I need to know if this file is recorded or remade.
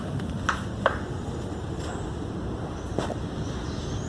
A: recorded